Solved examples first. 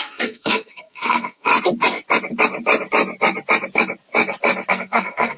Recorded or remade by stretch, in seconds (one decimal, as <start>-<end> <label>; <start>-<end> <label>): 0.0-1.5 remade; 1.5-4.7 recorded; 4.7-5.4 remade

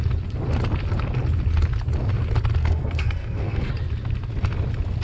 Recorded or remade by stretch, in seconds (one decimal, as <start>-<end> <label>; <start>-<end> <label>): 0.0-2.6 recorded; 2.6-3.7 remade; 3.7-5.0 recorded

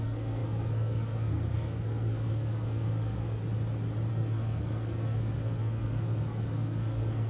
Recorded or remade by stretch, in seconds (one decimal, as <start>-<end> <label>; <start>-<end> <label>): 0.0-3.4 remade; 3.4-4.1 recorded; 4.1-7.3 remade

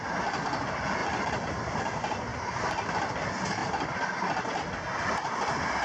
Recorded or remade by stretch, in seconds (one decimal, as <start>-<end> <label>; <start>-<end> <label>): 0.0-1.0 recorded; 1.0-1.8 remade; 1.8-5.8 recorded